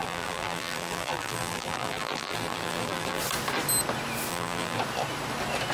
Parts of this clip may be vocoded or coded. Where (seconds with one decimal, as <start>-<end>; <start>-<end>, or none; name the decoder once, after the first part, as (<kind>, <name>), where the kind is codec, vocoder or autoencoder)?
0.0-3.2 (vocoder, BigVGAN v2); 4.3-4.8